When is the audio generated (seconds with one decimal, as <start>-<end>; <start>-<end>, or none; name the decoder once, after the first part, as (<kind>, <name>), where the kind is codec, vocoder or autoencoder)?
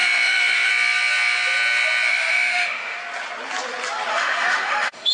0.0-0.7 (autoencoder, DAC-VAE); 2.1-3.0; 4.1-5.1